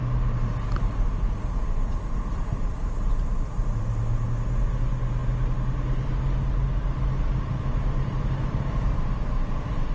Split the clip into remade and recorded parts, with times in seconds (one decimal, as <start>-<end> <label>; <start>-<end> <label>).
0.0-9.9 recorded